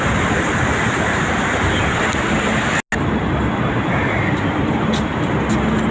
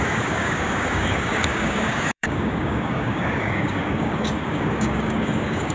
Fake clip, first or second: second